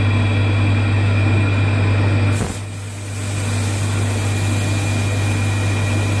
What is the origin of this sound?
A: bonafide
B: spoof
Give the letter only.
A